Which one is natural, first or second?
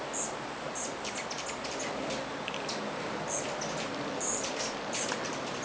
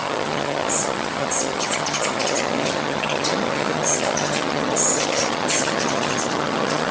first